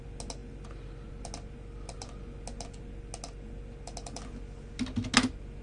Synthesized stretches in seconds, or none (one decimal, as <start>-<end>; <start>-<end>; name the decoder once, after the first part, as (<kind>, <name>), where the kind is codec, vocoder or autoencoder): none

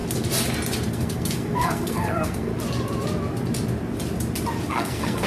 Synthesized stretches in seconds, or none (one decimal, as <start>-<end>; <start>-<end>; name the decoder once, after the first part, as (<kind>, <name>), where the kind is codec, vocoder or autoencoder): 0.9-2.5 (codec, SNAC); 4.7-5.3

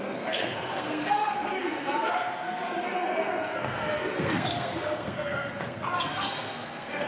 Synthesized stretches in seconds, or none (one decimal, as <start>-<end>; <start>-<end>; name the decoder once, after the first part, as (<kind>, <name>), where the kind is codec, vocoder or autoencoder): 0.0-7.1 (codec, SNAC)

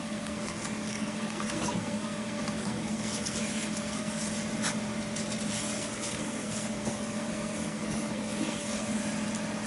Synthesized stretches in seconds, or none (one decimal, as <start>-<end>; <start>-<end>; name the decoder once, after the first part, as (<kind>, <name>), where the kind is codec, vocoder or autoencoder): 0.0-4.2 (codec, SNAC); 5.5-9.0

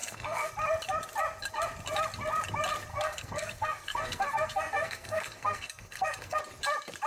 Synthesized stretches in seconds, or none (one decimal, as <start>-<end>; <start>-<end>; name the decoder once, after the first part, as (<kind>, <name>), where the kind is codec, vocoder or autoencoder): 0.0-0.5 (codec, SNAC); 2.9-6.4